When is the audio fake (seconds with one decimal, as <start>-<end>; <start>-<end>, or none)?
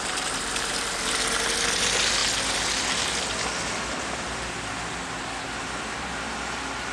none